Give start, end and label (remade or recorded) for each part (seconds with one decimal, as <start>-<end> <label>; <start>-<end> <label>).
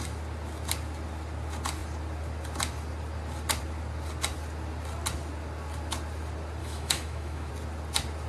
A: 0.0-6.6 recorded; 6.6-7.5 remade; 7.5-8.3 recorded